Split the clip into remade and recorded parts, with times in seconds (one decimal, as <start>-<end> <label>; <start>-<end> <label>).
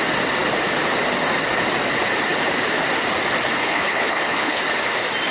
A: 0.0-3.6 recorded; 3.6-4.6 remade; 4.6-5.3 recorded